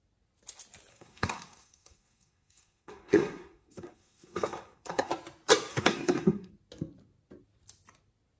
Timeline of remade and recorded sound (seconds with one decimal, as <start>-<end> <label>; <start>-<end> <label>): 0.0-0.9 recorded; 0.9-5.1 remade; 5.1-5.7 recorded; 5.7-6.5 remade; 6.5-8.4 recorded